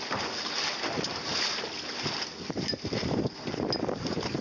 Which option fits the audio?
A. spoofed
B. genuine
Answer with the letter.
B